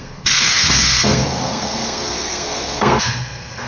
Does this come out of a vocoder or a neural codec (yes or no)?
yes